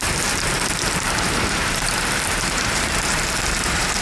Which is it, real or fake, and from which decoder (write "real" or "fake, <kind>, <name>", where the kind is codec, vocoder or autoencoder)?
fake, vocoder, BigVGAN v2